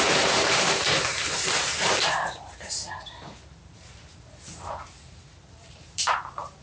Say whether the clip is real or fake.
fake